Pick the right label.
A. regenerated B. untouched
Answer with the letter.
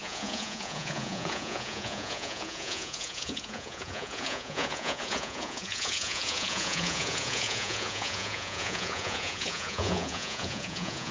A